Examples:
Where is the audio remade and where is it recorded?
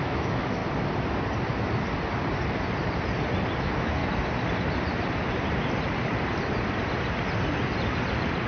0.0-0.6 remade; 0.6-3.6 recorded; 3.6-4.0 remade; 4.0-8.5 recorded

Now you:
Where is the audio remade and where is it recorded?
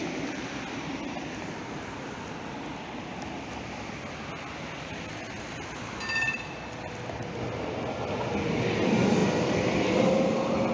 0.0-10.7 recorded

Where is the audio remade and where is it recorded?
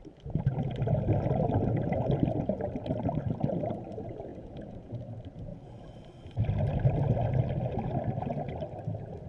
0.0-4.3 recorded; 4.3-5.0 remade; 5.0-9.3 recorded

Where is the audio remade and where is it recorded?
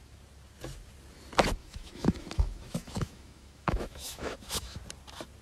0.0-1.6 recorded; 1.6-4.8 remade; 4.8-5.4 recorded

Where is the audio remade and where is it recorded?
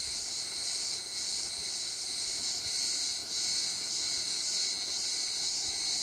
0.0-0.6 remade; 0.6-1.5 recorded; 1.5-3.2 remade; 3.2-5.0 recorded; 5.0-6.0 remade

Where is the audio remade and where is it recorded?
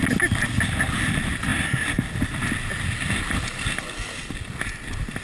0.0-5.2 recorded